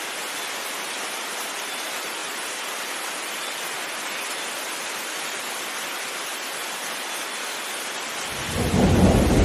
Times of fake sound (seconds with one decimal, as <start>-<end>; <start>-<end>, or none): none